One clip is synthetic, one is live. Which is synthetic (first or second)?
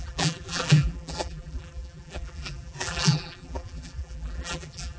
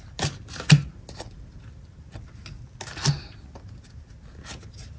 first